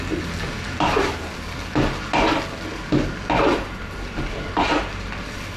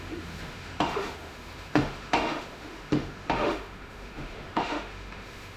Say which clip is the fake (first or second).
second